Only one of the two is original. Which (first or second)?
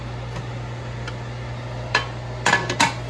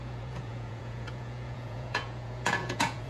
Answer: first